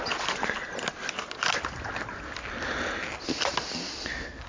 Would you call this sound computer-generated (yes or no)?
no